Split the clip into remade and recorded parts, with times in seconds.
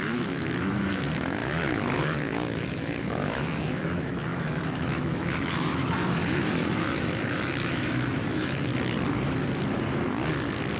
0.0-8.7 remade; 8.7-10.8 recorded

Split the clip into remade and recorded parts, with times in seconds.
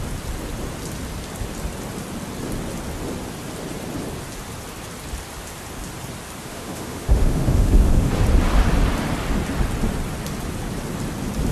0.0-6.4 recorded; 6.4-8.1 remade; 8.1-11.5 recorded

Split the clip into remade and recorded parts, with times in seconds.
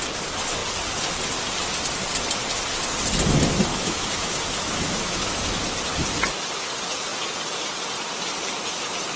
0.0-3.7 recorded; 3.7-5.4 remade; 5.4-9.2 recorded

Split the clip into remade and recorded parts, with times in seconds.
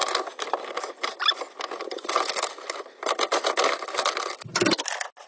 0.0-5.3 recorded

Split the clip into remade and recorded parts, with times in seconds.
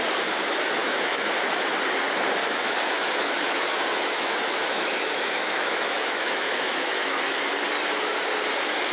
0.0-0.8 recorded; 0.8-1.3 remade; 1.3-2.4 recorded; 2.4-7.5 remade; 7.5-8.9 recorded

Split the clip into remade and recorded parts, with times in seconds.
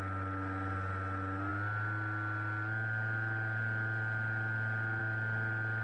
0.0-5.8 recorded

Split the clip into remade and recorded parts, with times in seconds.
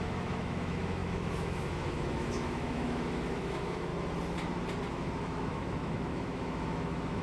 0.0-3.9 remade; 3.9-4.9 recorded; 4.9-7.2 remade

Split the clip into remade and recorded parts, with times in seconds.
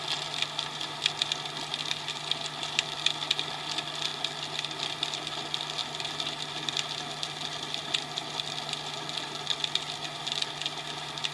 0.0-11.3 recorded